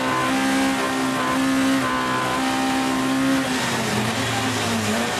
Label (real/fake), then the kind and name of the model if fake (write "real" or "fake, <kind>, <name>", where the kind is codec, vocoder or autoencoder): real